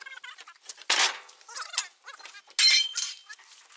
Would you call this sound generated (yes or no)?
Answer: no